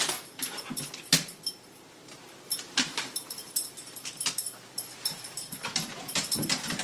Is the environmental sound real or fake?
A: fake